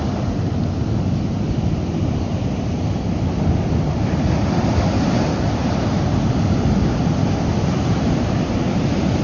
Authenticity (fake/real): real